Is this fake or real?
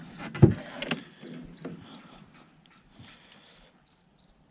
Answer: real